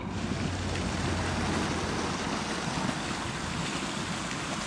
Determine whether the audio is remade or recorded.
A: recorded